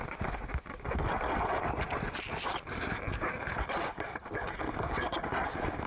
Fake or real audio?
real